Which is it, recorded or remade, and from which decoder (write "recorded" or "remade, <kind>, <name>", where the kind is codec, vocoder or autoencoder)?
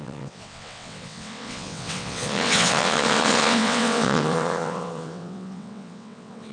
remade, vocoder, WaveNeXt